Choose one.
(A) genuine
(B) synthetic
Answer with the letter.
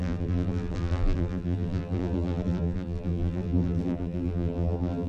B